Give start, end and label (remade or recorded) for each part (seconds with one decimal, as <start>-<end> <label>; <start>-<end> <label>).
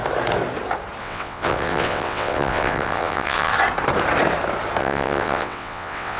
0.0-1.0 recorded; 1.0-3.5 remade; 3.5-4.8 recorded; 4.8-6.2 remade